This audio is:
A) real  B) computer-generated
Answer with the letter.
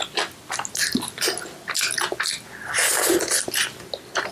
A